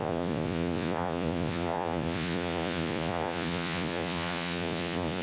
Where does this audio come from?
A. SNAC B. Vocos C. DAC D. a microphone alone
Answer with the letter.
B